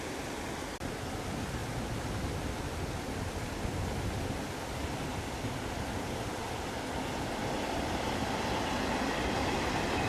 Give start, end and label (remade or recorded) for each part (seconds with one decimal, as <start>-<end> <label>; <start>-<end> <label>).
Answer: 0.0-10.1 recorded

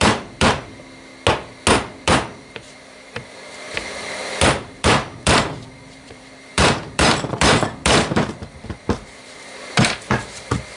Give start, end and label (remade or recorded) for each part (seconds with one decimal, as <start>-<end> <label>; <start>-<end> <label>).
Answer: 0.0-1.1 remade; 1.1-2.0 recorded; 2.0-10.8 remade

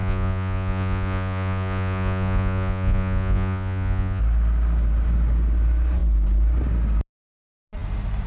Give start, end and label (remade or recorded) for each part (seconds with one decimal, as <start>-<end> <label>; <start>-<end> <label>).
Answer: 0.0-4.2 remade; 4.2-8.3 recorded

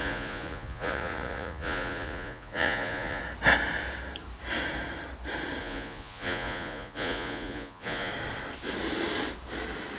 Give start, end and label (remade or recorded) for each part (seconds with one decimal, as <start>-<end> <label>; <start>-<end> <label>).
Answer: 0.0-3.2 remade; 3.2-5.6 recorded; 5.6-8.1 remade; 8.1-10.0 recorded

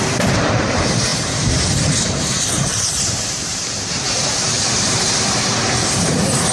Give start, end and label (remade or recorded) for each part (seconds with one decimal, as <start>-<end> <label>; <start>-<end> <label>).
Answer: 0.0-6.5 remade

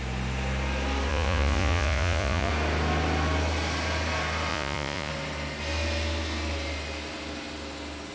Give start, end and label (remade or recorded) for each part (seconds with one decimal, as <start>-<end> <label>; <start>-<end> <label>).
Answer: 0.0-1.1 recorded; 1.1-2.5 remade; 2.5-4.5 recorded; 4.5-5.1 remade; 5.1-8.1 recorded

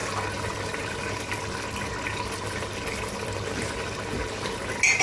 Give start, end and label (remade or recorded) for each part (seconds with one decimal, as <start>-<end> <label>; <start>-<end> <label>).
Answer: 0.0-5.0 recorded